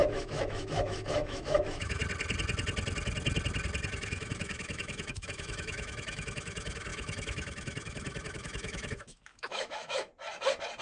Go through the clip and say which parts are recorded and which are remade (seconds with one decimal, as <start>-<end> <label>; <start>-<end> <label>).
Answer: 0.0-2.0 remade; 2.0-3.9 recorded; 3.9-10.1 remade; 10.1-10.8 recorded